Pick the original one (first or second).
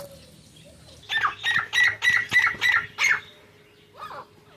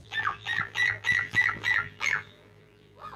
first